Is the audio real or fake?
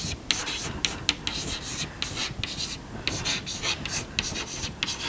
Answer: real